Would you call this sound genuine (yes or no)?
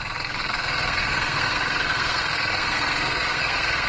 no